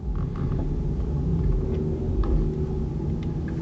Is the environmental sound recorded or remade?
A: recorded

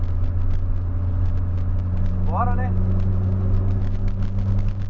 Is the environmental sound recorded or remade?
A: recorded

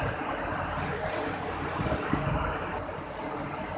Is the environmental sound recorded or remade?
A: recorded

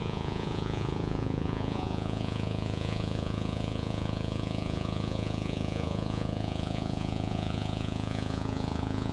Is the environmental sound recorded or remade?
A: remade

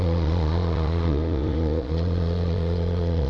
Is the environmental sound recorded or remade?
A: remade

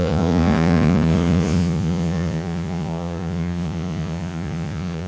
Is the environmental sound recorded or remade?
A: remade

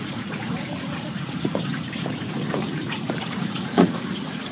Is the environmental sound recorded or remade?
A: remade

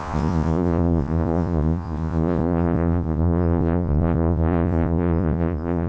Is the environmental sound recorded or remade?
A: remade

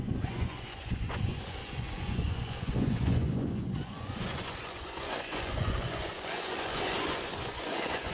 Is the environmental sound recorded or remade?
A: remade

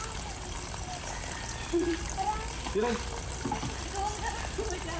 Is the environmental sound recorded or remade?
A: recorded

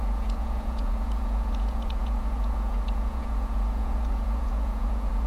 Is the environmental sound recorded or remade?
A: remade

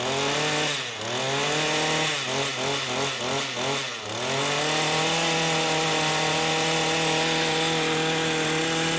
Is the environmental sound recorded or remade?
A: recorded